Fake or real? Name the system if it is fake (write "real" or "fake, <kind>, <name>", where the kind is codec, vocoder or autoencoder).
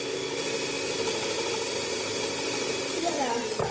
real